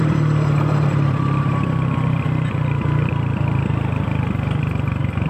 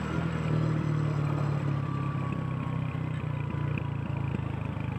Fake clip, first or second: first